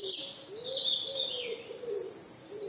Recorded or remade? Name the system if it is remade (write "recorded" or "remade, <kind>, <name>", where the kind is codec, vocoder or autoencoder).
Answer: recorded